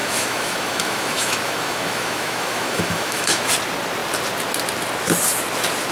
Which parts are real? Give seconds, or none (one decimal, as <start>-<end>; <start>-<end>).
3.5-5.9